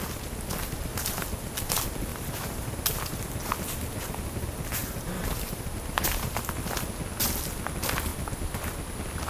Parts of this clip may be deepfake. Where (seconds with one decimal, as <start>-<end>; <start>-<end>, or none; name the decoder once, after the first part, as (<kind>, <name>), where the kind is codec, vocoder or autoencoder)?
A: 2.1-2.7 (vocoder, BigVGAN v2); 4.8-6.4

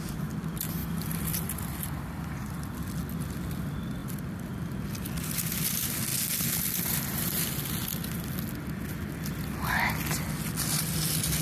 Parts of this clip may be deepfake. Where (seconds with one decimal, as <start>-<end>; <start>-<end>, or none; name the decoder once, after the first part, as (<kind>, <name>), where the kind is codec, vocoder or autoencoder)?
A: none

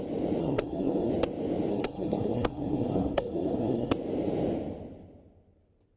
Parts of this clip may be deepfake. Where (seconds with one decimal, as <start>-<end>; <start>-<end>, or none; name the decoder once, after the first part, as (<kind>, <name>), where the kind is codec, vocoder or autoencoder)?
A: 0.4-1.1 (codec, SNAC); 1.7-3.9

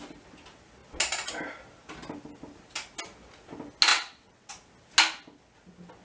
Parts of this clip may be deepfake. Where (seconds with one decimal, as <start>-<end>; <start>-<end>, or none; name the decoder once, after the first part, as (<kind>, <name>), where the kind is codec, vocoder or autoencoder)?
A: 3.9-4.5 (vocoder, WaveNeXt)

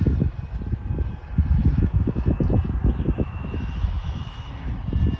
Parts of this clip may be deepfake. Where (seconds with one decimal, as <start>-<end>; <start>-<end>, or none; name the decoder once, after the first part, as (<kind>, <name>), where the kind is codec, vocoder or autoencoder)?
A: 1.6-2.4 (autoencoder, DAC-VAE); 2.8-4.7